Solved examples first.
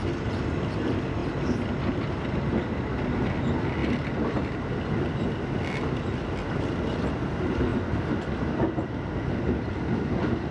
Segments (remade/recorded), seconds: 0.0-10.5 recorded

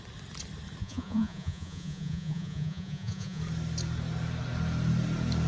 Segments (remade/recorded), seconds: 0.0-0.8 recorded; 0.8-3.4 remade; 3.4-5.5 recorded

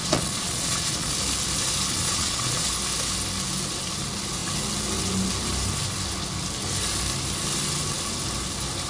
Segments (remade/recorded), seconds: 0.0-1.1 remade; 1.1-2.0 recorded; 2.0-2.7 remade; 2.7-8.9 recorded

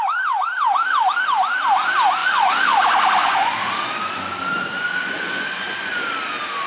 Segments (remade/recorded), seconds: 0.0-2.2 recorded; 2.2-2.8 remade; 2.8-3.2 recorded; 3.2-6.2 remade; 6.2-6.7 recorded

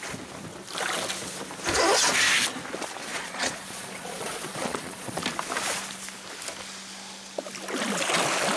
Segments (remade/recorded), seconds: 0.0-3.1 recorded; 3.1-5.2 remade; 5.2-8.6 recorded